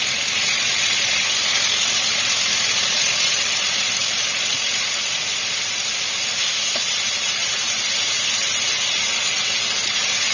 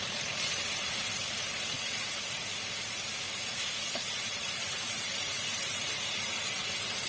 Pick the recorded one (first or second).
first